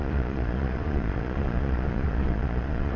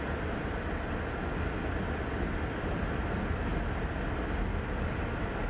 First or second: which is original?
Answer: second